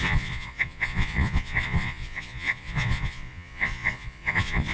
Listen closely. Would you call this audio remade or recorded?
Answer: remade